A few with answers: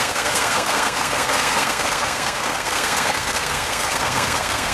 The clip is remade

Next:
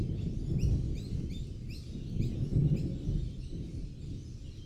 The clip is recorded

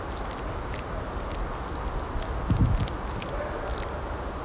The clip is recorded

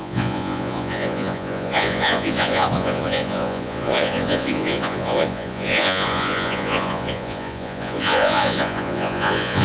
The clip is remade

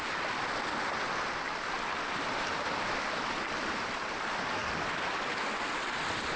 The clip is recorded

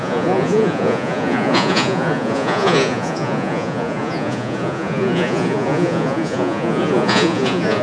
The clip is remade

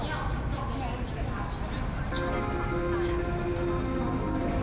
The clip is recorded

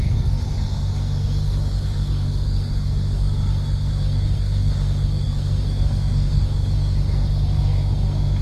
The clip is remade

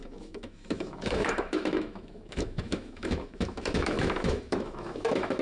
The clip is remade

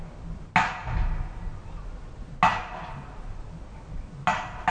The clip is recorded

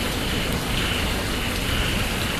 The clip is recorded